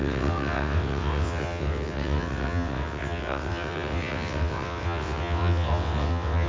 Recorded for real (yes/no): no